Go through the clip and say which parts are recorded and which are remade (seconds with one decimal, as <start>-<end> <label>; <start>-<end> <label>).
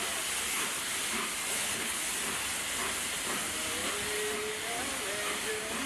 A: 0.0-1.5 recorded; 1.5-2.0 remade; 2.0-5.9 recorded